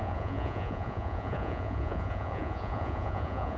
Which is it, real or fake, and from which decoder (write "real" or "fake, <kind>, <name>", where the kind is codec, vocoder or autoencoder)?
fake, vocoder, Vocos